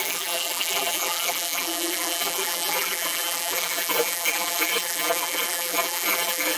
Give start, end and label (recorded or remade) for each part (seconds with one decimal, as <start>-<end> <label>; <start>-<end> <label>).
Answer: 0.0-6.6 remade